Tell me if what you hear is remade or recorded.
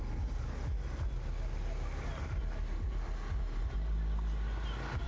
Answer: recorded